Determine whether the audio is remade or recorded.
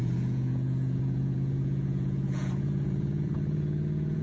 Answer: remade